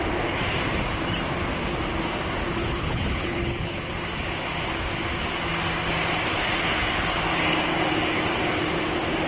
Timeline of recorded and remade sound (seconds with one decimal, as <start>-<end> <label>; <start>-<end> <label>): 0.0-2.6 recorded; 2.6-3.9 remade; 3.9-9.3 recorded